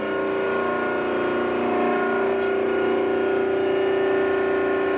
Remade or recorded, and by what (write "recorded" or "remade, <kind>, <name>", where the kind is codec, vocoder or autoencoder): recorded